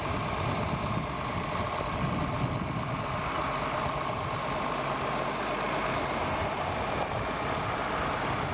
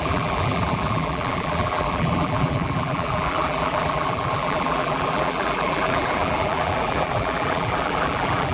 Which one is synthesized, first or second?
second